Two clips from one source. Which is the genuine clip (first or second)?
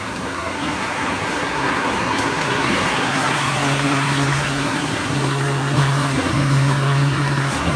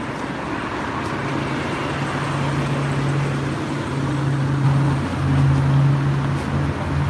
second